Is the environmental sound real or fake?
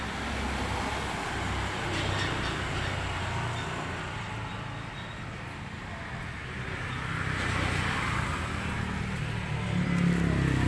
real